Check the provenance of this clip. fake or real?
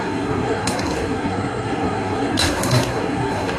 fake